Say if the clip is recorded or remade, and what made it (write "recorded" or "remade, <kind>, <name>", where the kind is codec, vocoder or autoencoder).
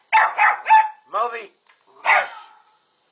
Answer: recorded